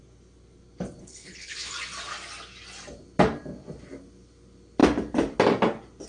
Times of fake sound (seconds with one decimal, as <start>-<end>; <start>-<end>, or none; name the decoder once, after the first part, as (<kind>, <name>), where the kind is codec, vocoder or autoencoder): 1.0-1.7 (codec, HILCodec)